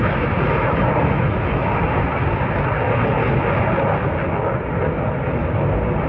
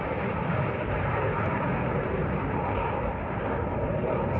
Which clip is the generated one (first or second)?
second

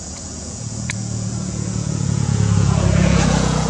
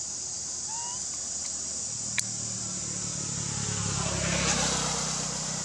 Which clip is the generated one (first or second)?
first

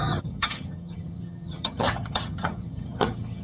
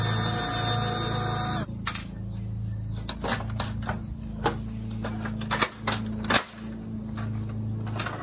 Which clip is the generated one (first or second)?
first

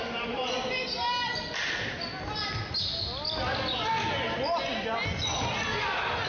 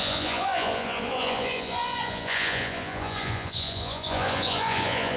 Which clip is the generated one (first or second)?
second